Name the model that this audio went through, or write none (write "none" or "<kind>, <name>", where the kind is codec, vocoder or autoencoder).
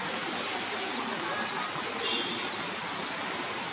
none